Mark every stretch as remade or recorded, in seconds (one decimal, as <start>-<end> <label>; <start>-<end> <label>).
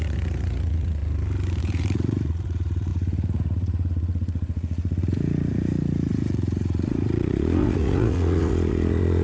0.0-1.0 remade; 1.0-1.6 recorded; 1.6-9.2 remade